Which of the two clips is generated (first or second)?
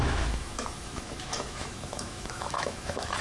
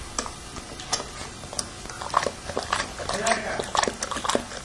first